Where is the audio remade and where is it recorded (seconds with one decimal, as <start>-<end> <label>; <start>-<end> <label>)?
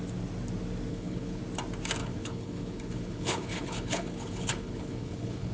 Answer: 0.0-0.9 recorded; 0.9-1.4 remade; 1.4-2.0 recorded; 2.0-5.5 remade